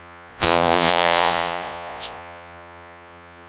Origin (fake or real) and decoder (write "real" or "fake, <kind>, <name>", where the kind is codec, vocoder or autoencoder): fake, vocoder, Vocos